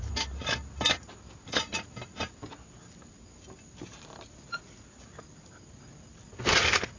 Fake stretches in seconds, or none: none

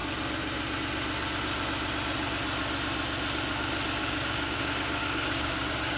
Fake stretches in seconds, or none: 4.0-6.0 (codec, DAC)

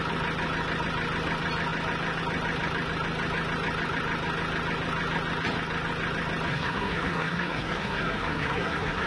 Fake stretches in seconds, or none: 6.5-9.1 (codec, SNAC)